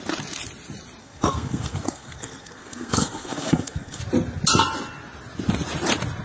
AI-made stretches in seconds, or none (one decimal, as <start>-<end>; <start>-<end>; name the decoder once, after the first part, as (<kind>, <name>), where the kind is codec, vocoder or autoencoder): 1.0-4.0 (codec, SNAC)